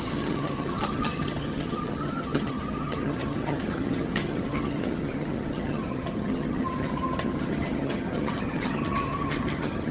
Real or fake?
fake